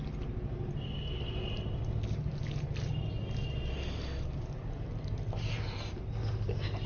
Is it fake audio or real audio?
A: real